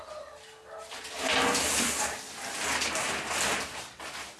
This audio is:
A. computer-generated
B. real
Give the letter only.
B